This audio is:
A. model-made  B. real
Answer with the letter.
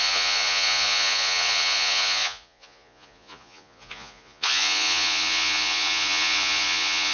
A